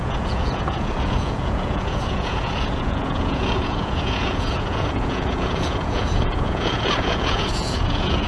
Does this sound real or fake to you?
fake